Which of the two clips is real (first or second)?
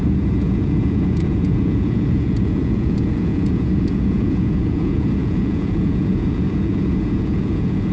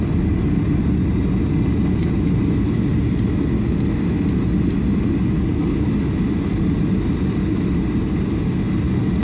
second